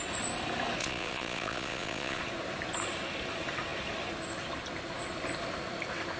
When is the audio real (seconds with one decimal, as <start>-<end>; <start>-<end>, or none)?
0.0-0.8; 2.2-6.2